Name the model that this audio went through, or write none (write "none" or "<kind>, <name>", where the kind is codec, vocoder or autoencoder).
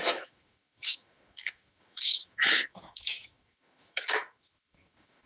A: autoencoder, DAC-VAE